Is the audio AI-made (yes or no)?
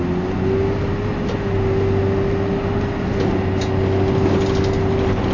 no